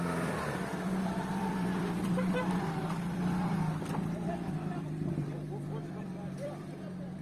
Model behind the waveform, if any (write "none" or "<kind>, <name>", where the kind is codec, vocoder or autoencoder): vocoder, BigVGAN v2